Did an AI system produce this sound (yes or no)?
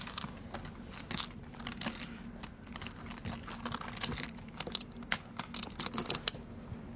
no